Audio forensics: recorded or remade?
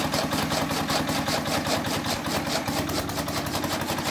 recorded